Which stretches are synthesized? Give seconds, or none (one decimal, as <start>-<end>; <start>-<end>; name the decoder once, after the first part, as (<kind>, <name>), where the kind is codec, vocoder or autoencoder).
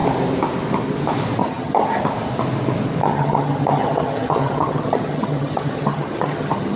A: 1.4-2.0 (vocoder, HiFi-GAN); 3.0-6.8